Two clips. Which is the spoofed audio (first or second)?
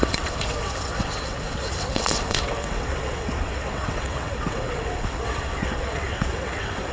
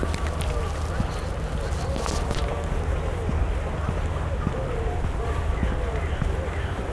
first